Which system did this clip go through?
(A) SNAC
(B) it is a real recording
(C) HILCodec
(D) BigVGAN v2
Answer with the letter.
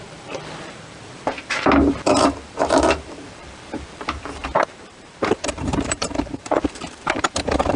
D